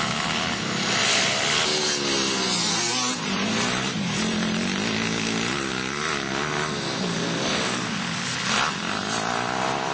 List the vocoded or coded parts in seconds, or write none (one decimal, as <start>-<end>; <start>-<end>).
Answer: none